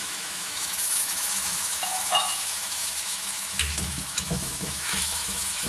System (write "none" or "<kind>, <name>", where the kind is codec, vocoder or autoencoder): autoencoder, DAC-VAE